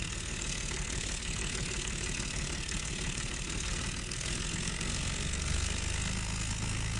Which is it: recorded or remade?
remade